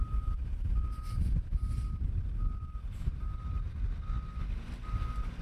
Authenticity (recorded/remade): recorded